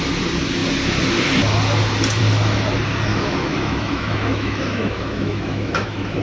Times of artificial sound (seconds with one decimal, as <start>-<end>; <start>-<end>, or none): 3.1-6.2